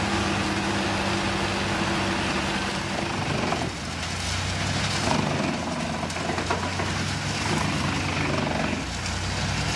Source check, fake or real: real